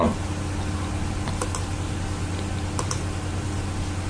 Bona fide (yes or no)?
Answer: yes